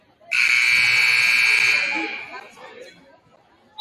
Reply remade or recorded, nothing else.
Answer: recorded